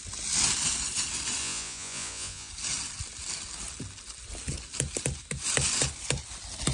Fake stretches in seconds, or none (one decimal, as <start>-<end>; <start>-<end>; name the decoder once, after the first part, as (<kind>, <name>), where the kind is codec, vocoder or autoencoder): 1.4-2.5 (vocoder, Vocos)